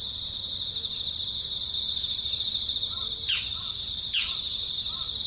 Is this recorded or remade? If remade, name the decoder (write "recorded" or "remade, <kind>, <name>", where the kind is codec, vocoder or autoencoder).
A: recorded